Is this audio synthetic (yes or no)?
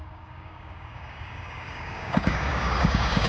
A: yes